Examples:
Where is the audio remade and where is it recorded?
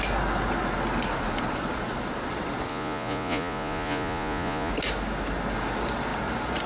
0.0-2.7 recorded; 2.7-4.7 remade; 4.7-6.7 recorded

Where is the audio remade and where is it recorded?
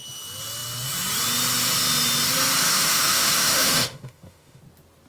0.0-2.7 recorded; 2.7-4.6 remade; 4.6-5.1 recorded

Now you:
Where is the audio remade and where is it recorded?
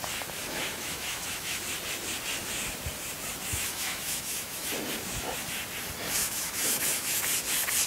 0.0-0.4 recorded; 0.4-1.6 remade; 1.6-3.5 recorded; 3.5-4.7 remade; 4.7-6.2 recorded; 6.2-7.2 remade; 7.2-7.9 recorded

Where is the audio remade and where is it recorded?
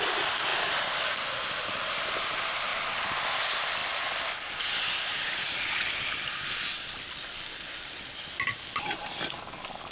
0.0-9.9 recorded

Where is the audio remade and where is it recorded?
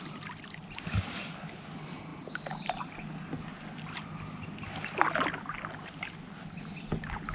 0.0-7.3 recorded